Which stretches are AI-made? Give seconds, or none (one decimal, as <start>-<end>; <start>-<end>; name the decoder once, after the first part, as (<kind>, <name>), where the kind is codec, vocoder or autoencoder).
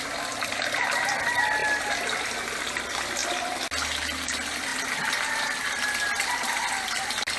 none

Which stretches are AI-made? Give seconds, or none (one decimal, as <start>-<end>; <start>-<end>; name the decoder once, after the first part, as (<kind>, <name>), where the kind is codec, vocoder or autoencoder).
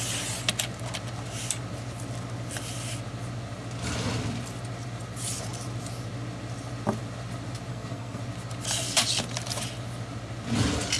7.7-8.2 (codec, SNAC)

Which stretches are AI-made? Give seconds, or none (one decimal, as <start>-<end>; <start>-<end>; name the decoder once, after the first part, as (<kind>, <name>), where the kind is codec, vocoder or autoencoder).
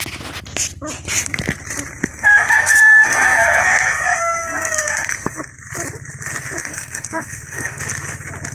2.0-5.4 (codec, SNAC); 6.6-7.8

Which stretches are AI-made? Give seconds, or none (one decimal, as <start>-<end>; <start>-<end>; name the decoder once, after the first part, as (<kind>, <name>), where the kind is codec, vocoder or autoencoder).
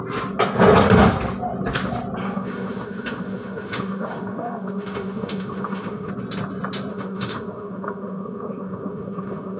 2.2-6.1 (autoencoder, DAC-VAE); 6.9-9.6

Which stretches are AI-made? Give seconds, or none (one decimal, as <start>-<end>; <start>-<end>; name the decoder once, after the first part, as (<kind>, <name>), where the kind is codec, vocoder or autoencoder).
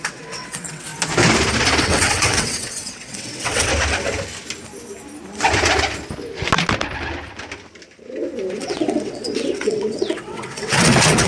0.0-0.9 (vocoder, WaveNeXt); 1.8-3.7; 8.5-11.3